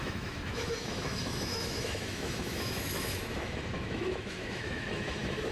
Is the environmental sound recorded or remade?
remade